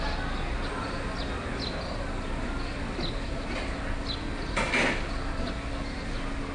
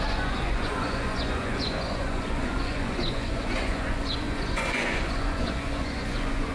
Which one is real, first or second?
first